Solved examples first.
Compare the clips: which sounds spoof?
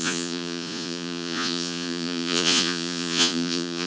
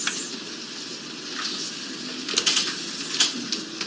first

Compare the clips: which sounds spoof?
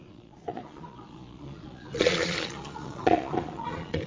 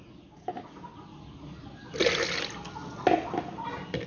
first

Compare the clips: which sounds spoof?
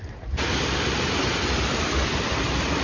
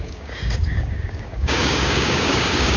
second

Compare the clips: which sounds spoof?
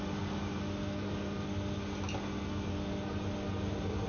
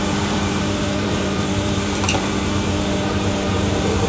second